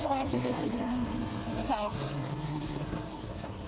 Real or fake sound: fake